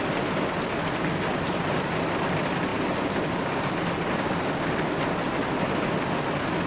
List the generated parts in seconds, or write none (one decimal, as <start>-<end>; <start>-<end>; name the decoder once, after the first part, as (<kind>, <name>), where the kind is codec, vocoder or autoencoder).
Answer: none